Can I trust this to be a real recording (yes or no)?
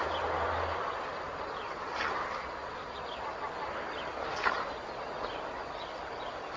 no